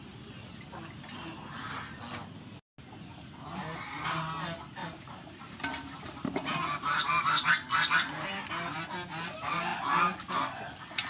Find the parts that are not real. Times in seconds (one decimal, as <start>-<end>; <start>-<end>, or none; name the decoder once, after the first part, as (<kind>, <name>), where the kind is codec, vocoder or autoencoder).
4.8-7.1 (vocoder, BigVGAN v2)